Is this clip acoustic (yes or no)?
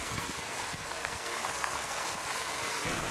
no